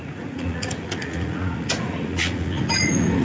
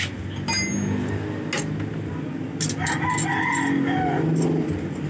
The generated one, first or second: first